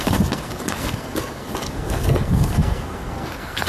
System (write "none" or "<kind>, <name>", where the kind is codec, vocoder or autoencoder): codec, SNAC